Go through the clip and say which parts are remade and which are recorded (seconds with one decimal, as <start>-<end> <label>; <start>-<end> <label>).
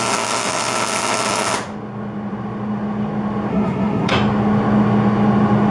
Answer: 0.0-3.5 recorded; 3.5-4.1 remade; 4.1-5.7 recorded